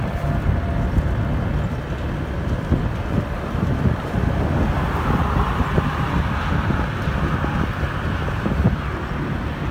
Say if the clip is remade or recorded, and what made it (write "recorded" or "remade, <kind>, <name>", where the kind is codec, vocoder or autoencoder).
recorded